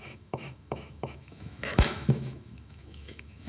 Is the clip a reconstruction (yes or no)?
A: yes